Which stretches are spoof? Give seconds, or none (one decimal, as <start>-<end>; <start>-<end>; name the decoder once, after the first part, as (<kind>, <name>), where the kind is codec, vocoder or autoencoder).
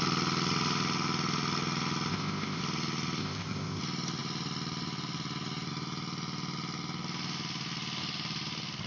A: 2.1-2.6 (codec, ZipCodec); 3.2-3.8